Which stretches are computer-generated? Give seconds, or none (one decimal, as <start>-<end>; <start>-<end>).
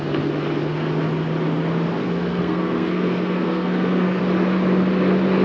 2.0-4.2